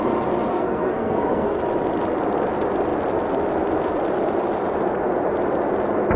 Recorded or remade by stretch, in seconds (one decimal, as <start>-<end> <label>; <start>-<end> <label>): 0.0-0.5 recorded; 0.5-1.6 remade; 1.6-6.2 recorded